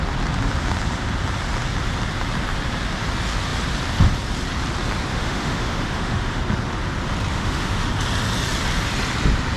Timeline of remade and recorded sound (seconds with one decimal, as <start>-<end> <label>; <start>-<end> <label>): 0.0-5.1 recorded; 5.1-6.4 remade; 6.4-7.3 recorded; 7.3-7.9 remade; 7.9-9.6 recorded